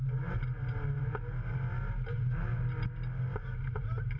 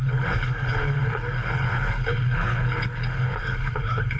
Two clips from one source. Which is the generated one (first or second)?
second